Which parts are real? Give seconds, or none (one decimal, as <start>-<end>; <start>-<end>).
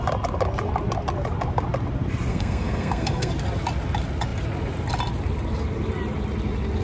0.0-2.3; 3.3-6.8